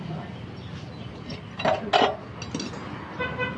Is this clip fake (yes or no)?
no